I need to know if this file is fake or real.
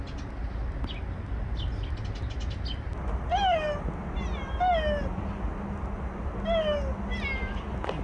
real